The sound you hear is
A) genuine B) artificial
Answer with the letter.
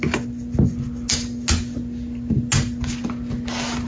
A